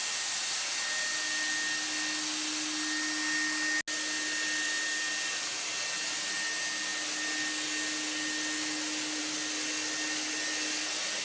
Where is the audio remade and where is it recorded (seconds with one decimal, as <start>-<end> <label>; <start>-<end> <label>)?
0.0-11.2 recorded